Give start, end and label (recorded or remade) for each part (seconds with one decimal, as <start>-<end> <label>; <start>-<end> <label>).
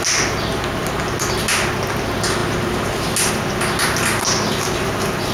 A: 0.0-5.3 recorded